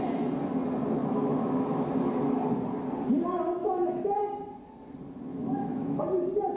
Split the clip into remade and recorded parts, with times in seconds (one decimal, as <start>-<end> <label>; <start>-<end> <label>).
0.0-1.0 recorded; 1.0-1.9 remade; 1.9-3.6 recorded; 3.6-4.2 remade; 4.2-5.3 recorded; 5.3-6.0 remade; 6.0-6.6 recorded